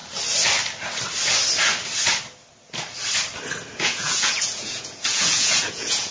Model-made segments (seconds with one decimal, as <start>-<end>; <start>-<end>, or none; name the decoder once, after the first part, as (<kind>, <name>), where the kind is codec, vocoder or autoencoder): 3.7-6.1 (vocoder, Vocos)